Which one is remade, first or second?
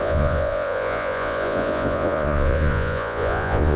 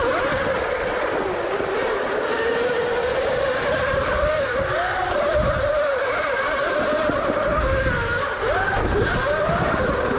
first